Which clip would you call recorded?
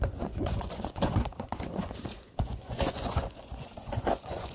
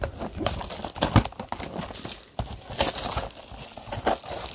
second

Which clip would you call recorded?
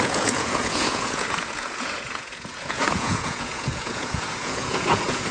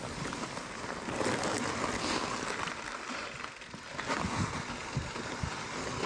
second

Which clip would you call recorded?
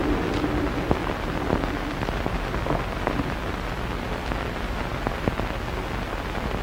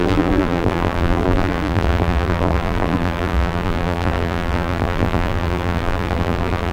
first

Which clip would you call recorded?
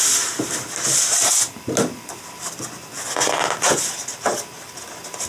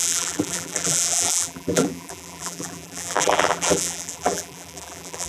first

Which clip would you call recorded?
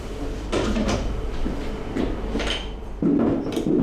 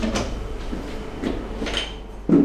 second